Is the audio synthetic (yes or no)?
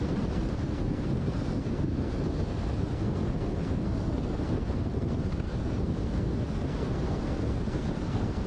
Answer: yes